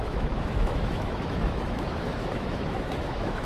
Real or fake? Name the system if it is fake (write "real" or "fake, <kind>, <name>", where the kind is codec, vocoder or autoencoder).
fake, autoencoder, DAC-VAE